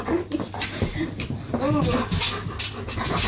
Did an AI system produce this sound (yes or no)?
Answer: no